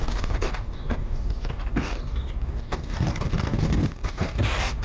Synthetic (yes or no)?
yes